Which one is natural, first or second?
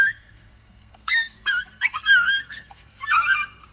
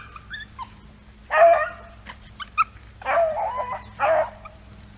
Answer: second